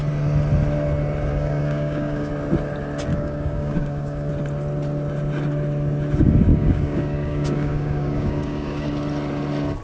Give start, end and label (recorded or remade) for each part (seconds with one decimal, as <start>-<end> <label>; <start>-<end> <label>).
0.0-1.3 recorded; 1.3-2.3 remade; 2.3-3.1 recorded; 3.1-4.3 remade; 4.3-6.5 recorded; 6.5-8.9 remade; 8.9-9.8 recorded